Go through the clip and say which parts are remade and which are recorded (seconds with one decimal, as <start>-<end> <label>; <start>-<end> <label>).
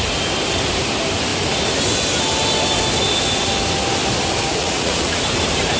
0.0-4.6 recorded; 4.6-5.2 remade; 5.2-5.8 recorded